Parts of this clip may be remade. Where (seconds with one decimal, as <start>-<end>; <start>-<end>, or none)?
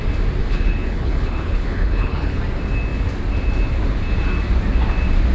0.4-2.4